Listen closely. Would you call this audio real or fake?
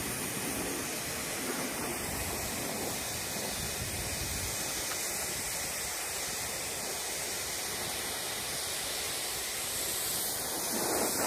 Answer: real